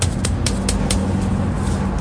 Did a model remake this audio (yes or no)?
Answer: no